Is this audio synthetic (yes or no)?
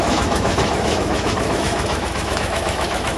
yes